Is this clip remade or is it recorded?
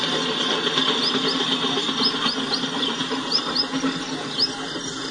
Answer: recorded